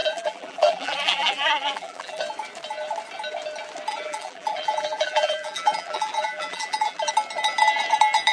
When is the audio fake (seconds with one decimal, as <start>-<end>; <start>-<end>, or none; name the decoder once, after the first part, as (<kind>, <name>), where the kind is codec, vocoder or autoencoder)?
0.0-2.2 (vocoder, BigVGAN v2); 3.9-7.1